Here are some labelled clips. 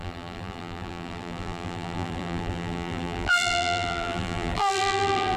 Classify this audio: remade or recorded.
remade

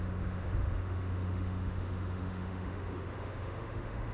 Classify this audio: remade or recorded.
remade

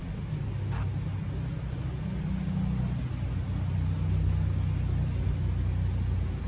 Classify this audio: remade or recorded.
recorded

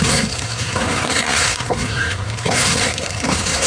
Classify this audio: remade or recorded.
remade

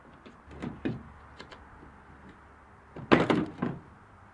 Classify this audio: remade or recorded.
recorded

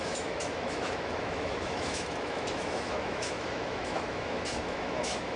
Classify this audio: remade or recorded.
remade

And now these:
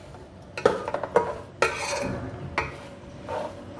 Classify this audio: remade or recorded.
recorded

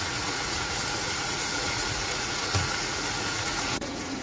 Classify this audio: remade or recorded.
remade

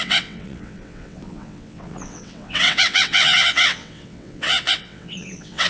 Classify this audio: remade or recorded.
remade